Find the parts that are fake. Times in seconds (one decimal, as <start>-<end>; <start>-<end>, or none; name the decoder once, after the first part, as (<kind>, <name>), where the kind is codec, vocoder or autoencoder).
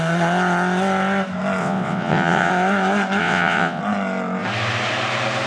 1.6-2.5 (vocoder, WaveNeXt); 3.2-3.8